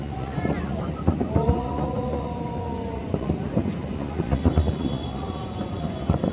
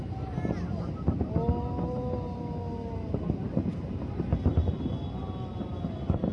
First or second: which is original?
second